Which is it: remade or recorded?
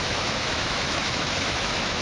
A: remade